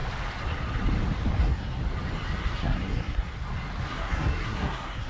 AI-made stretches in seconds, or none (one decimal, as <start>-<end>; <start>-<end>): 1.4-1.8; 2.4-3.3; 3.9-5.1